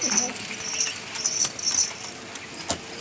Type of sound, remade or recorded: recorded